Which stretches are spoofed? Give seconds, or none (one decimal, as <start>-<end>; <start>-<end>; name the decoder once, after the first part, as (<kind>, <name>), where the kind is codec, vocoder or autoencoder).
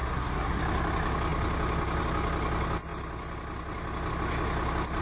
0.0-0.6 (codec, SNAC)